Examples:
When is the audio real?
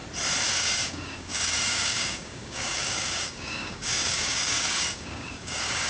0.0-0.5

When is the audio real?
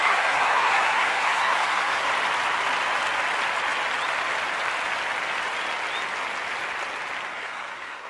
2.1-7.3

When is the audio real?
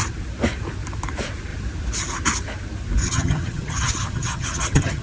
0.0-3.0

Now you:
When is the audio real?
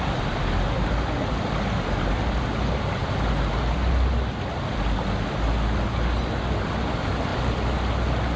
0.0-8.4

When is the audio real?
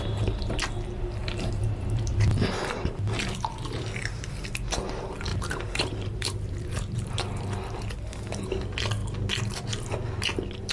0.0-1.2; 3.8-5.3; 7.1-10.7